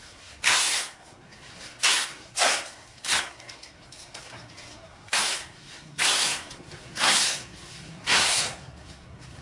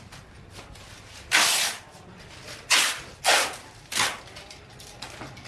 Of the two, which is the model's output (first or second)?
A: first